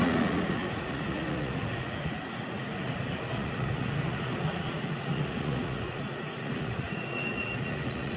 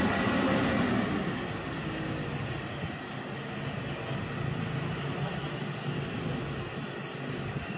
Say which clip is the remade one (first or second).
first